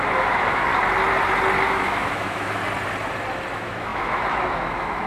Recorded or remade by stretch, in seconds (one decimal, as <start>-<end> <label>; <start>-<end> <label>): 0.0-0.7 remade; 0.7-1.7 recorded; 1.7-2.6 remade; 2.6-3.5 recorded; 3.5-5.1 remade